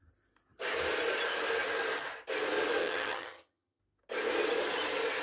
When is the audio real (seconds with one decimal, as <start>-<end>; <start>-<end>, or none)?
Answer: 0.0-2.8; 3.8-5.2